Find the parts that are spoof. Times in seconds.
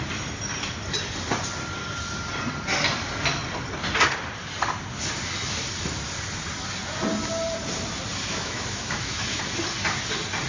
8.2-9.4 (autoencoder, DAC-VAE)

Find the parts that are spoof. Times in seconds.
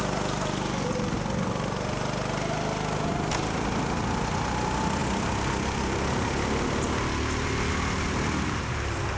none